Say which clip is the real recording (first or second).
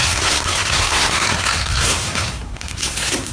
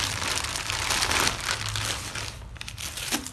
second